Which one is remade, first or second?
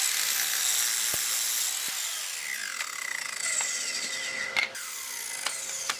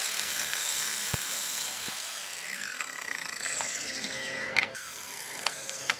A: second